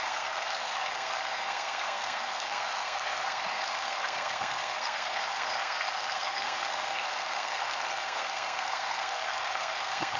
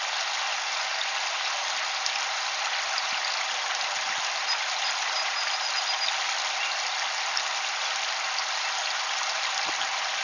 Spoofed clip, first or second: first